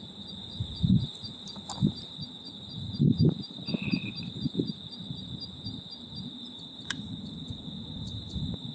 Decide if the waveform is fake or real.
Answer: real